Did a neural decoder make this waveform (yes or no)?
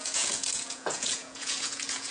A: yes